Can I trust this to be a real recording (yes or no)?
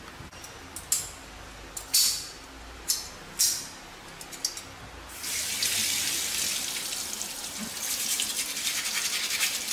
yes